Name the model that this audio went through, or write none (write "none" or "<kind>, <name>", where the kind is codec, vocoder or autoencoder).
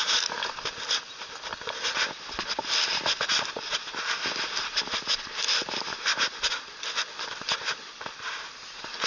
none